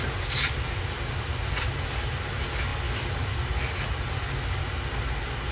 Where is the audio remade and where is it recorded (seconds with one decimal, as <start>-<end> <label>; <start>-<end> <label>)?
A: 0.0-5.5 recorded